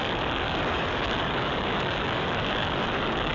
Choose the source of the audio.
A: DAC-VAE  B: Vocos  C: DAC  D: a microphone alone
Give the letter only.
C